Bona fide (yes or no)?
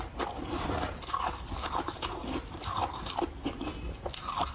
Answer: no